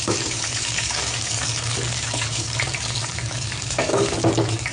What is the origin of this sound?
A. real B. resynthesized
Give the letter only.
B